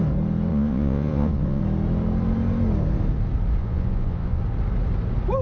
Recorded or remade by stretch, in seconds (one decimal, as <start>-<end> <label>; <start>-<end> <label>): 0.0-0.5 recorded; 0.5-1.6 remade; 1.6-3.6 recorded; 3.6-4.4 remade; 4.4-5.4 recorded